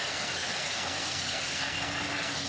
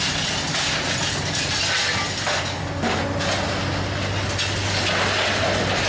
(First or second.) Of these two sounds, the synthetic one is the first